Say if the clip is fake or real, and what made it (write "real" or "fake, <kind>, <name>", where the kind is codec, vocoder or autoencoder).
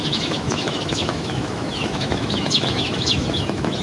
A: fake, autoencoder, DAC-VAE